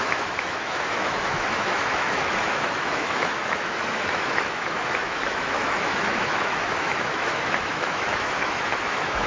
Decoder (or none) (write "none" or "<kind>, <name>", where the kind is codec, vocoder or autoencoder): autoencoder, DAC-VAE